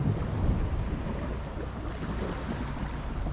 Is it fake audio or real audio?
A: real